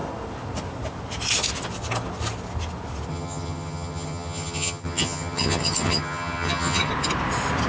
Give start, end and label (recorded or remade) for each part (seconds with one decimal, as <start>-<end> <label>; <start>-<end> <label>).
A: 0.0-3.1 recorded; 3.1-6.9 remade; 6.9-7.7 recorded